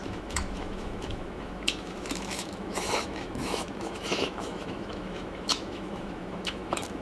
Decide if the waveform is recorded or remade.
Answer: remade